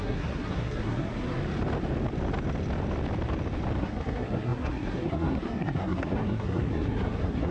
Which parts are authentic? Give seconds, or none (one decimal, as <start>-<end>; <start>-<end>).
1.4-3.8